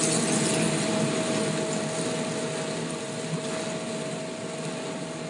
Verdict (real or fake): real